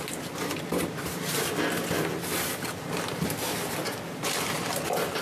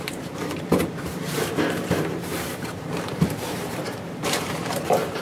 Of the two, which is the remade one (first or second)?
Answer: second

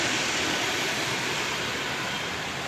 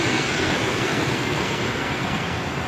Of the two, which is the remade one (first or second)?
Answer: second